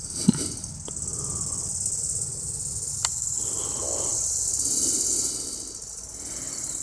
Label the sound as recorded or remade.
recorded